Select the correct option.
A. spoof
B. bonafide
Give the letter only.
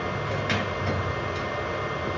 B